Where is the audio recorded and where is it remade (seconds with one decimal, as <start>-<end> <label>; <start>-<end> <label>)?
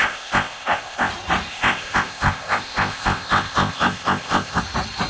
0.0-1.1 remade; 1.1-1.5 recorded; 1.5-4.6 remade; 4.6-5.1 recorded